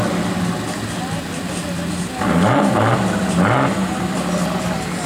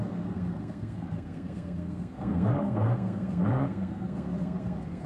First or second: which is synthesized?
second